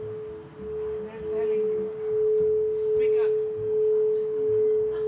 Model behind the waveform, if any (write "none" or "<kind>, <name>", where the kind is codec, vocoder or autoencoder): none